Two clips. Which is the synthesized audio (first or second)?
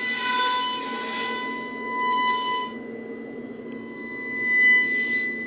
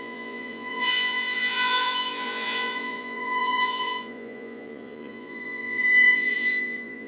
second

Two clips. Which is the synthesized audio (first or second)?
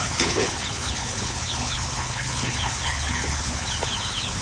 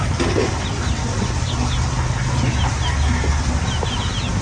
first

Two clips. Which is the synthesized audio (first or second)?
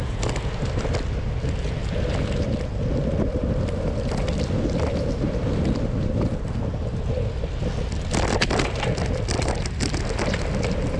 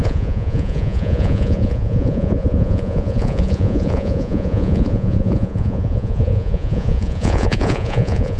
second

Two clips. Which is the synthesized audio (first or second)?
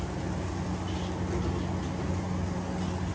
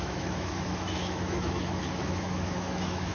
second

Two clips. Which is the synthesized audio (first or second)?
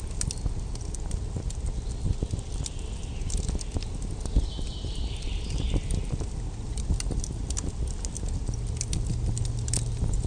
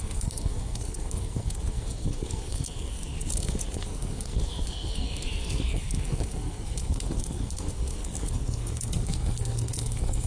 second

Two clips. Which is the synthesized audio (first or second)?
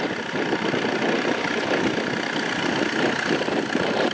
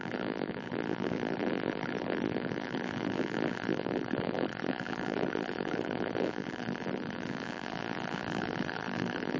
second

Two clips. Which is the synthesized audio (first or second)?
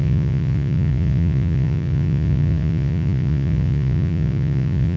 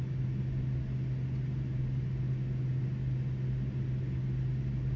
first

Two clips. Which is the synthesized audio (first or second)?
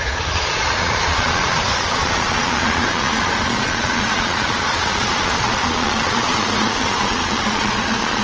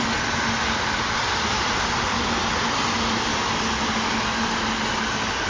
first